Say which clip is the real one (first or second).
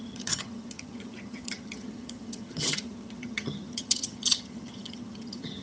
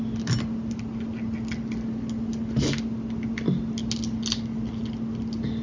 second